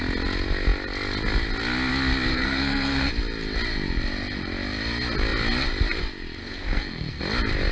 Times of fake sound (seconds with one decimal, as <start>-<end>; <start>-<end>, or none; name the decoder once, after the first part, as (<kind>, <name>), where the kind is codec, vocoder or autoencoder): 2.3-3.1 (codec, SNAC); 6.4-7.2